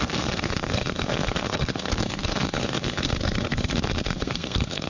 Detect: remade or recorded remade